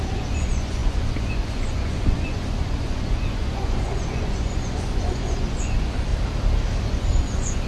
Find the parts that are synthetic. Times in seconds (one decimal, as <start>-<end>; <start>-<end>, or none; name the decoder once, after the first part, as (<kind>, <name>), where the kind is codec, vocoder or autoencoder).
0.0-6.1 (vocoder, Vocos); 6.8-7.7